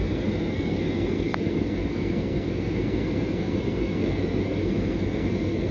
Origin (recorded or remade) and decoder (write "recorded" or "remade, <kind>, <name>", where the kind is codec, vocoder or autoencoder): remade, codec, SNAC